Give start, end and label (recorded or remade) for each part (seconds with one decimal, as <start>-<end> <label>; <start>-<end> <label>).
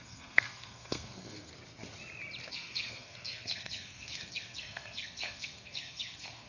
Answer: 0.0-1.5 remade; 1.5-2.5 recorded; 2.5-6.5 remade